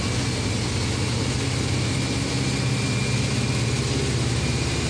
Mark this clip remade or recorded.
recorded